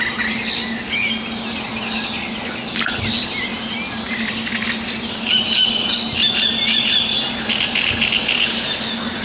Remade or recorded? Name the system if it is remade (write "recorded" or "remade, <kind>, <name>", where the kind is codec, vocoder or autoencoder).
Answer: recorded